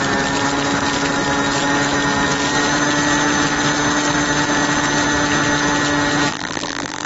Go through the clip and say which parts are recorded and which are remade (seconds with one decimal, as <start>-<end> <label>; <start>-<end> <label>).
0.0-6.3 recorded; 6.3-7.1 remade